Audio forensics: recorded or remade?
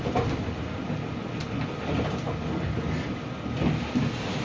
recorded